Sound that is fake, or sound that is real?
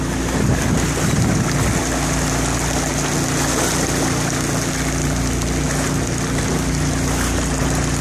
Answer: real